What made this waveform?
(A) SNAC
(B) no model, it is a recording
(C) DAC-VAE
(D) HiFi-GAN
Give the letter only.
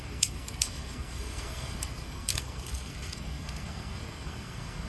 A